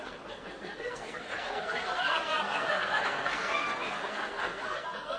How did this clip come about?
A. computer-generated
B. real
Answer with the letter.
A